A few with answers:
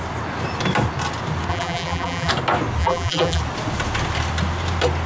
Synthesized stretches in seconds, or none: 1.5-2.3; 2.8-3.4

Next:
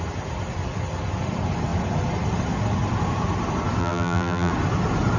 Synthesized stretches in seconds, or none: 3.8-4.5